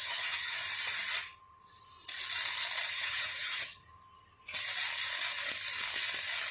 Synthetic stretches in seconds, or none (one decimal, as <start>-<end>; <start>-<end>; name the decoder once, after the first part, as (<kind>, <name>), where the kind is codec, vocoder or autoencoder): 0.0-0.6 (vocoder, HiFi-GAN); 2.9-3.8